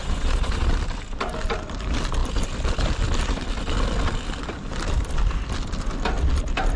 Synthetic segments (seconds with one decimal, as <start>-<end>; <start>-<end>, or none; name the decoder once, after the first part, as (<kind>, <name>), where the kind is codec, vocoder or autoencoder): 0.0-0.7 (vocoder, Vocos)